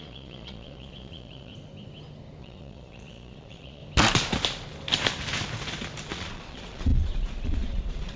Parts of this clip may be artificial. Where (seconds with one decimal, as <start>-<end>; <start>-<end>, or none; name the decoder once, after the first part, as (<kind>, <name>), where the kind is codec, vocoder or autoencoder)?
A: 0.0-1.5 (vocoder, Vocos); 2.4-3.8; 6.1-8.2